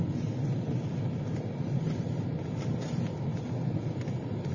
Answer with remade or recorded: recorded